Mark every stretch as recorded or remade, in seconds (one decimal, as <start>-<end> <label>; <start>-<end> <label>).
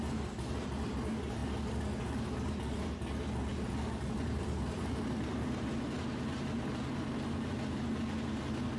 0.0-3.5 recorded; 3.5-7.6 remade; 7.6-8.8 recorded